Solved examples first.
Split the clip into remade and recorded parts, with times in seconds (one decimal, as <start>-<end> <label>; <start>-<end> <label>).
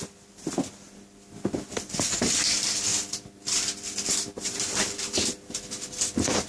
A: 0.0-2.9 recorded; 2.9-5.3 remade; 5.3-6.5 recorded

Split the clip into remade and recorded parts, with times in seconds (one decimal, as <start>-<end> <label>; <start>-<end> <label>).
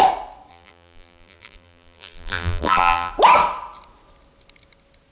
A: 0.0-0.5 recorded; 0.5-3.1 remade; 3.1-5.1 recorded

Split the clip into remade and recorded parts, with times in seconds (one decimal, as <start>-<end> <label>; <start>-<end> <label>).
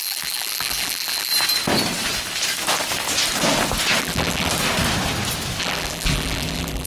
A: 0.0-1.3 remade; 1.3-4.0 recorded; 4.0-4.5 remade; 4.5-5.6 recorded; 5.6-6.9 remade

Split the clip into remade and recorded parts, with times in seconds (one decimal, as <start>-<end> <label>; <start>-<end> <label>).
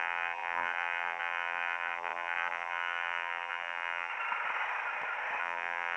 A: 0.0-4.1 remade; 4.1-5.4 recorded; 5.4-6.0 remade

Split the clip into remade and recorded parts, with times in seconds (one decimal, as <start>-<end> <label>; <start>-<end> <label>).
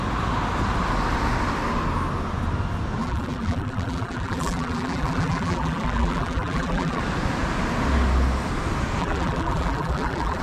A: 0.0-3.0 recorded; 3.0-7.0 remade; 7.0-9.0 recorded; 9.0-10.4 remade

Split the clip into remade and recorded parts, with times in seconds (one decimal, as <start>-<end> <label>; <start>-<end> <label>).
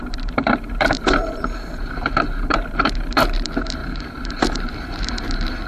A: 0.0-5.7 remade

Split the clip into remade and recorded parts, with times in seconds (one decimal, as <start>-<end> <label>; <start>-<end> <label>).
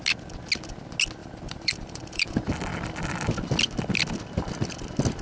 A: 0.0-1.2 recorded; 1.2-2.3 remade; 2.3-5.2 recorded